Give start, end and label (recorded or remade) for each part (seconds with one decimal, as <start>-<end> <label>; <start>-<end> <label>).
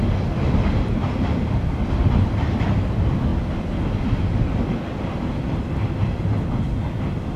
0.0-7.4 recorded